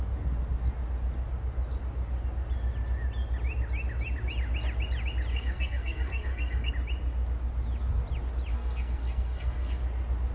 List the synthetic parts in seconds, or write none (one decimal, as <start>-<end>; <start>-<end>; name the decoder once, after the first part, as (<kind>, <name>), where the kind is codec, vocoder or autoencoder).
5.3-6.7 (codec, SNAC); 8.5-9.8